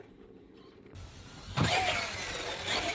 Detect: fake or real real